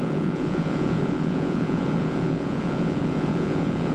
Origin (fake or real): fake